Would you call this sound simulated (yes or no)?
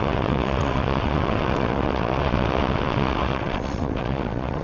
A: yes